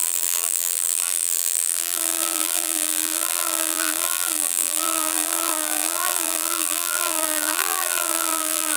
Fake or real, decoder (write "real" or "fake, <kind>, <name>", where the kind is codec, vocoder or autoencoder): fake, vocoder, BigVGAN v2